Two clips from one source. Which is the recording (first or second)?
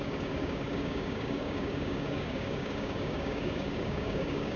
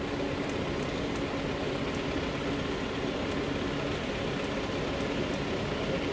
second